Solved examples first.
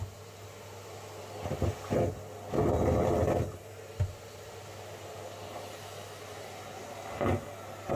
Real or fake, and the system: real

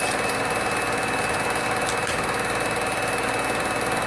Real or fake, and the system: real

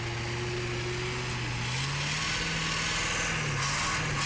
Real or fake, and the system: real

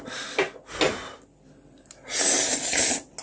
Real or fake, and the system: real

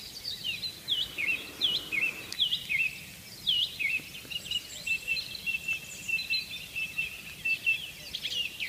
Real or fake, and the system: real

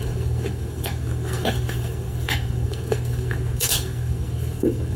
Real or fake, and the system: fake, codec, SNAC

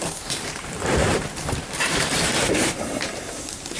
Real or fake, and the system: fake, vocoder, BigVGAN v2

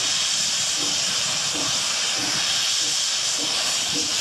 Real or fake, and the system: fake, vocoder, BigVGAN v2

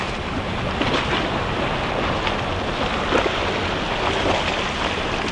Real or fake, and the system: real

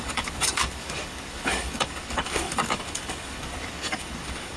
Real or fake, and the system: fake, codec, DAC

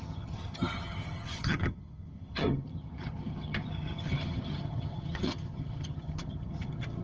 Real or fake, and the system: fake, vocoder, HiFi-GAN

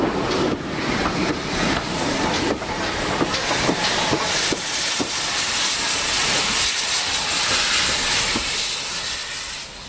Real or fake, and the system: real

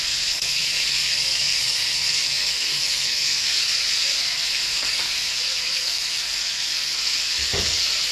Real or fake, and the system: fake, codec, SNAC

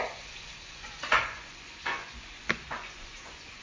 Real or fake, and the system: fake, vocoder, Vocos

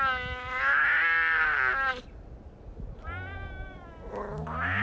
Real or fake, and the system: real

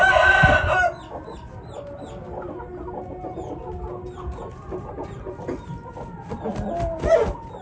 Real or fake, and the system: real